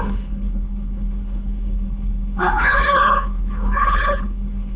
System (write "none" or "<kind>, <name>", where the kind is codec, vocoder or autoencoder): codec, HILCodec